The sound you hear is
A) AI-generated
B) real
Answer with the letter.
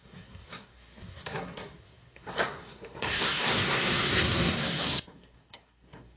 A